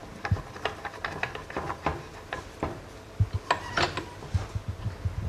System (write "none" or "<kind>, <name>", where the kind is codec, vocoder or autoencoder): none